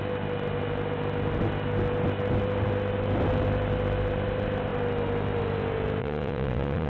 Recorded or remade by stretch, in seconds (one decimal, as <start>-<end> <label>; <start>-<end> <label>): 0.0-6.0 recorded; 6.0-6.9 remade